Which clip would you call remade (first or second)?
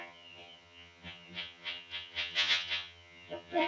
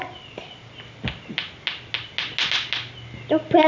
first